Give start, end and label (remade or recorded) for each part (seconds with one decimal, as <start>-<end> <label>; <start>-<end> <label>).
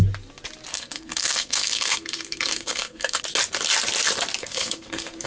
0.0-0.7 recorded; 0.7-3.2 remade; 3.2-4.4 recorded; 4.4-5.3 remade